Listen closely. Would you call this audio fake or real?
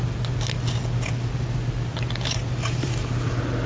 real